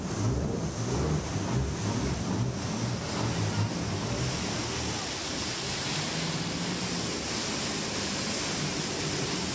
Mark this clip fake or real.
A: real